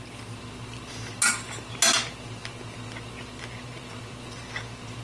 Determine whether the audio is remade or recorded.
recorded